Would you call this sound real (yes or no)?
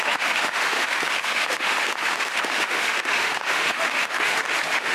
no